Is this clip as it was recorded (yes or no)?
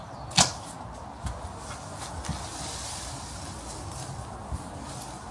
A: yes